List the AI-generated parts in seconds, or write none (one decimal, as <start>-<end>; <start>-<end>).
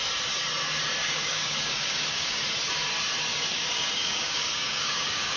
1.0-2.4; 3.3-5.4